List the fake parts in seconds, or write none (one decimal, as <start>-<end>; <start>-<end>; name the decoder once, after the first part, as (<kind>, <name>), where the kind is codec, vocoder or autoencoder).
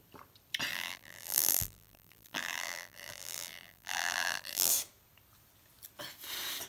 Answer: 0.7-4.7 (vocoder, BigVGAN v2)